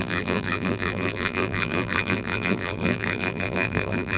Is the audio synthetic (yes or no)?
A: yes